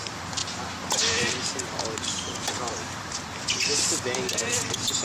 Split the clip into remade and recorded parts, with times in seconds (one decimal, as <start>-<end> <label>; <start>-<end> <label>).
0.0-0.4 remade; 0.4-1.2 recorded; 1.2-5.0 remade